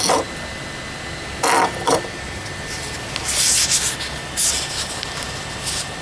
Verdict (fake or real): real